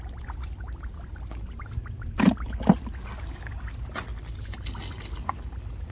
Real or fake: real